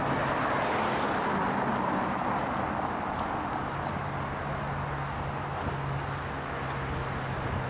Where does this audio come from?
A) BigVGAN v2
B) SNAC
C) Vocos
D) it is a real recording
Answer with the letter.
D